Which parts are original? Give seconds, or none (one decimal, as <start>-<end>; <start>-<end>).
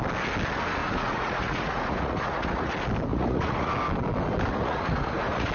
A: 0.0-0.8; 2.7-3.1; 3.7-4.5